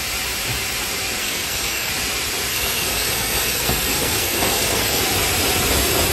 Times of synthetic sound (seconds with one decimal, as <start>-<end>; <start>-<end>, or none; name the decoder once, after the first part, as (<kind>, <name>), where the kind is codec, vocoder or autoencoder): 1.2-1.9 (codec, SNAC); 2.5-5.0